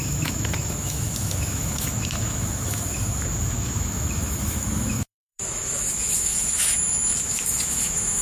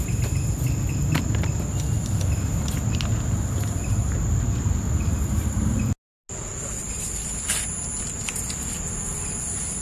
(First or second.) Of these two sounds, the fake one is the first